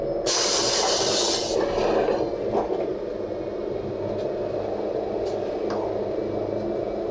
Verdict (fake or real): real